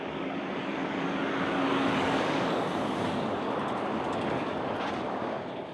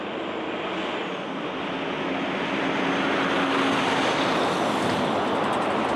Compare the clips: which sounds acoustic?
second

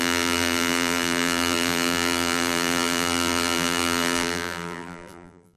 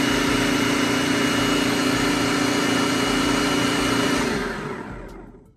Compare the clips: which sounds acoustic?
second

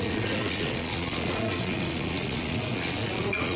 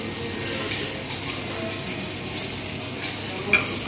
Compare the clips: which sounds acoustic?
second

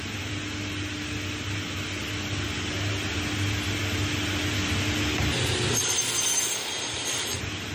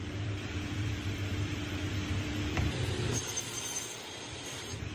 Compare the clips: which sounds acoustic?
first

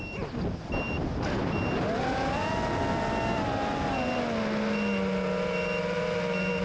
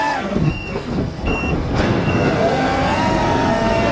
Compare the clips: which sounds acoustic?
first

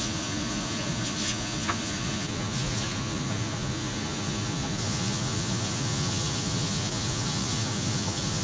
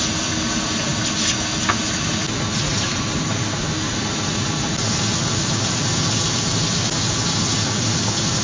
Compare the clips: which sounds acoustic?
second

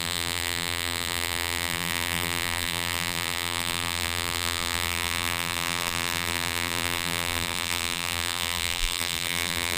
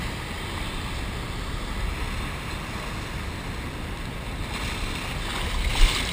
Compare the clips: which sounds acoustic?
second